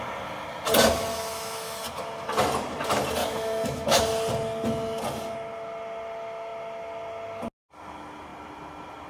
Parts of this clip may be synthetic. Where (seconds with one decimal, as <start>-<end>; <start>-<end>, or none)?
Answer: 1.1-1.8; 3.2-4.0